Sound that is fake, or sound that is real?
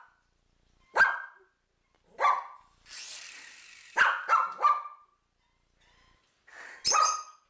real